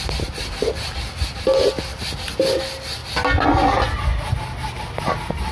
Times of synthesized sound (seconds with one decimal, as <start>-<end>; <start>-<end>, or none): none